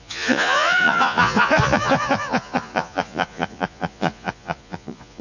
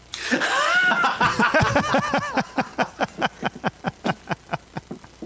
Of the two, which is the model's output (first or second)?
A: first